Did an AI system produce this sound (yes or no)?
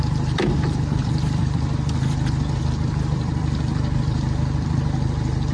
yes